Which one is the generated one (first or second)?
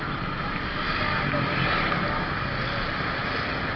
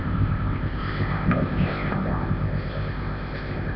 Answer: second